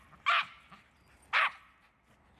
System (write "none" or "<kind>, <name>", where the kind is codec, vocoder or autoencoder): none